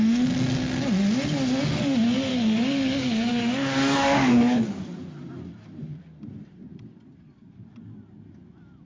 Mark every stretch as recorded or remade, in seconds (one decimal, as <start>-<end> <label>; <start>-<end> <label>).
0.0-2.3 recorded; 2.3-4.8 remade; 4.8-8.8 recorded